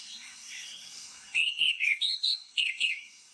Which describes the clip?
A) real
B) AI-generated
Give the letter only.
B